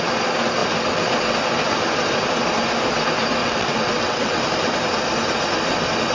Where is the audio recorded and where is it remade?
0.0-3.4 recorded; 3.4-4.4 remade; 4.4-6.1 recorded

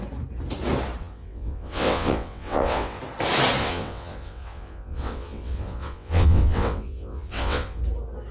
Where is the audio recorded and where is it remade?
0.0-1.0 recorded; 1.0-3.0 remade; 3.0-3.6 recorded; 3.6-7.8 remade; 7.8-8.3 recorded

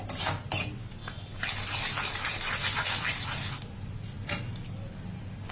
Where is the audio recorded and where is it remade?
0.0-5.5 recorded

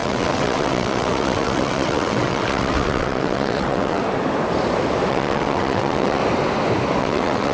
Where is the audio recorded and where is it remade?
0.0-4.0 remade; 4.0-5.1 recorded; 5.1-6.2 remade; 6.2-7.0 recorded; 7.0-7.5 remade

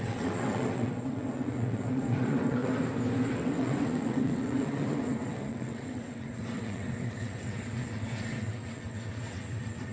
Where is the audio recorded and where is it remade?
0.0-2.7 remade; 2.7-3.3 recorded; 3.3-9.9 remade

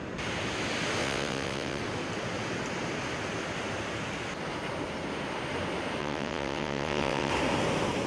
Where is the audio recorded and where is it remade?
0.0-1.0 recorded; 1.0-1.8 remade; 1.8-6.0 recorded; 6.0-7.3 remade; 7.3-8.1 recorded

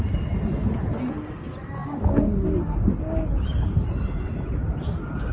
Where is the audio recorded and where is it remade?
0.0-5.3 recorded

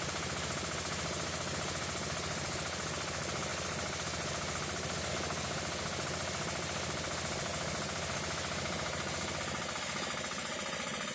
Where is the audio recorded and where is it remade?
0.0-11.1 recorded